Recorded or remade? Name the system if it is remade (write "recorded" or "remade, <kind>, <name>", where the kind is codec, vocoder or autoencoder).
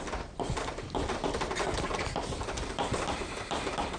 recorded